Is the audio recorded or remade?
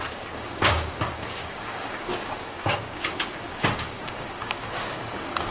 remade